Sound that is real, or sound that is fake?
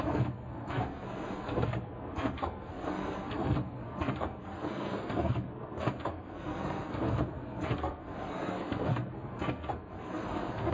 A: fake